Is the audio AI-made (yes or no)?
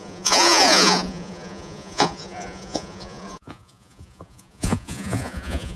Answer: yes